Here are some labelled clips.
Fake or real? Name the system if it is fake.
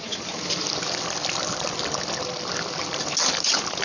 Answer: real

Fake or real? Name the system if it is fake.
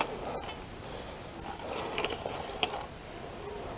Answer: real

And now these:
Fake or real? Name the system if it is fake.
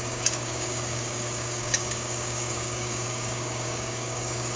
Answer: fake, codec, DAC